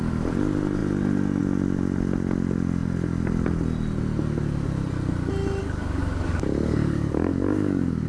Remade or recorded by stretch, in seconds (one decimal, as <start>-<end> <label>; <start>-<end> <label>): 0.0-5.6 recorded; 5.6-8.1 remade